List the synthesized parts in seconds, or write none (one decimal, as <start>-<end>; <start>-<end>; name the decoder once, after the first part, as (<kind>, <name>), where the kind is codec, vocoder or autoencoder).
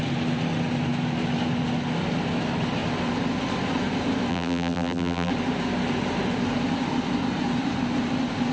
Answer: 4.3-5.3 (vocoder, BigVGAN v2)